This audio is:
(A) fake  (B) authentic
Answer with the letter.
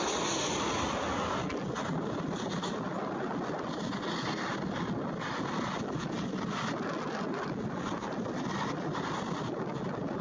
B